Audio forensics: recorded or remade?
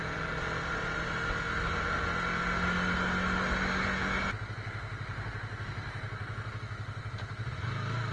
recorded